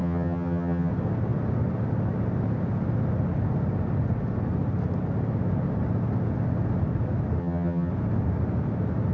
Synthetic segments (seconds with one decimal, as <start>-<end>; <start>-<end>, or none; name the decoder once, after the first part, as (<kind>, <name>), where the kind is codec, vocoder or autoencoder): 0.0-0.9 (vocoder, HiFi-GAN); 7.4-7.9